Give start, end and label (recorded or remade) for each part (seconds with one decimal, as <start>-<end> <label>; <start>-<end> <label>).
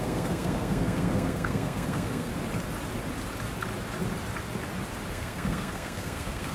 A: 0.0-2.3 remade; 2.3-5.1 recorded; 5.1-6.5 remade